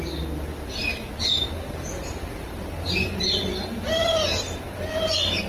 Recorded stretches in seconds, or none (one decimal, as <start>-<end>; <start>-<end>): 0.0-1.3; 4.6-5.5